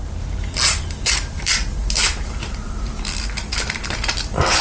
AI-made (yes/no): no